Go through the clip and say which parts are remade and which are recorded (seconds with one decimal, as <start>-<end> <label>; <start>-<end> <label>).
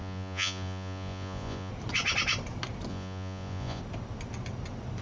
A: 0.0-1.7 remade; 1.7-2.9 recorded; 2.9-3.8 remade; 3.8-5.0 recorded